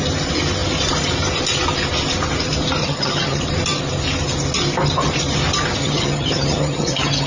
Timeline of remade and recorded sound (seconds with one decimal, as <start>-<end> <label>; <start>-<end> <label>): 0.0-2.8 recorded; 2.8-3.4 remade; 3.4-5.8 recorded; 5.8-7.3 remade

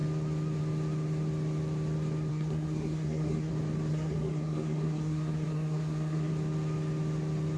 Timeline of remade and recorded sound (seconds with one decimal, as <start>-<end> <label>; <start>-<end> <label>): 0.0-2.3 recorded; 2.3-3.5 remade; 3.5-3.9 recorded; 3.9-6.3 remade; 6.3-7.6 recorded

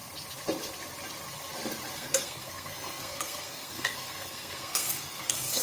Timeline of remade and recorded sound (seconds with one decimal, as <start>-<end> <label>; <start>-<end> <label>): 0.0-1.9 recorded; 1.9-5.6 remade

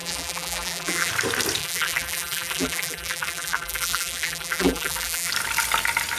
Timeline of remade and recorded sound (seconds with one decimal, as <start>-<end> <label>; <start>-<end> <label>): 0.0-1.1 remade; 1.1-1.6 recorded; 1.6-5.3 remade; 5.3-6.2 recorded

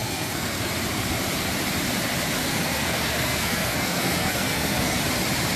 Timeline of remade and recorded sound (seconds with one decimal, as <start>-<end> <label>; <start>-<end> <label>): 0.0-0.7 remade; 0.7-2.4 recorded; 2.4-5.0 remade; 5.0-5.6 recorded

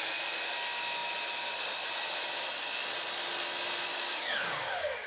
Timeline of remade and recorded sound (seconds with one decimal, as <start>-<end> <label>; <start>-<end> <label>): 0.0-3.9 recorded; 3.9-5.1 remade